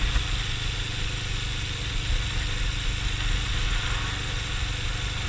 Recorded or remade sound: recorded